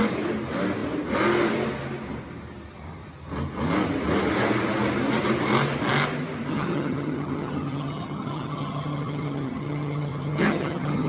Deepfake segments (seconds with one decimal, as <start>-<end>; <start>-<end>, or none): 6.5-11.1

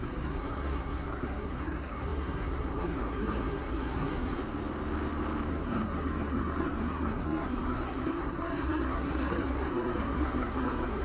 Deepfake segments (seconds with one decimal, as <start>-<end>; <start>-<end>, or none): 0.0-4.4; 5.5-11.0

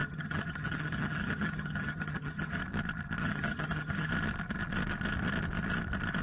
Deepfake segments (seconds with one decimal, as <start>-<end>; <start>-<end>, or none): 0.0-2.6; 3.2-4.1